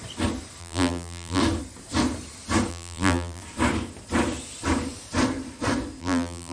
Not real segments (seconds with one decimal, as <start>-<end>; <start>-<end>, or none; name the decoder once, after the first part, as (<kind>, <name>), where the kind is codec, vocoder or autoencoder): 0.6-1.4 (vocoder, BigVGAN v2); 2.7-3.4; 6.0-6.5